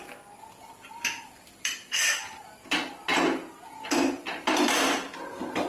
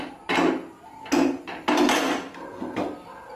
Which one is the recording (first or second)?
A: second